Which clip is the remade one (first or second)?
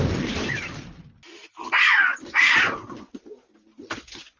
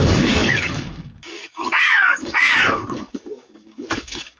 second